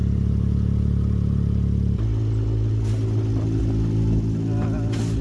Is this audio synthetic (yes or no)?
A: no